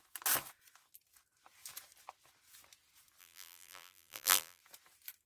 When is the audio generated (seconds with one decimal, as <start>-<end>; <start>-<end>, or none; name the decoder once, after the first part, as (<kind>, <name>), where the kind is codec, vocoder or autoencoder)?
3.2-4.6 (vocoder, BigVGAN v2)